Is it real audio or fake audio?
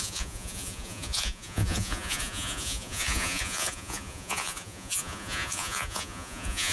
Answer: fake